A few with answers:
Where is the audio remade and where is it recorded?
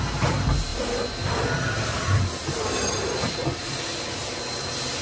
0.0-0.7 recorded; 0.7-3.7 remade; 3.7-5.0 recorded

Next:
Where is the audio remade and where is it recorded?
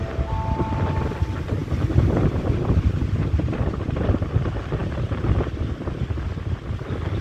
0.0-7.2 recorded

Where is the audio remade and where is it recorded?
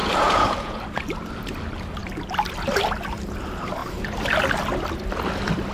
0.0-0.8 remade; 0.8-5.7 recorded